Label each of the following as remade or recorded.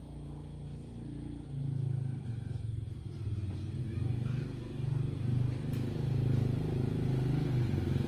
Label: recorded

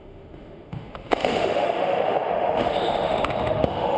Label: remade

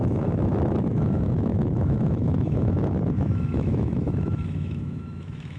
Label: remade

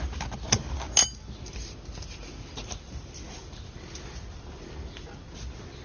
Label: recorded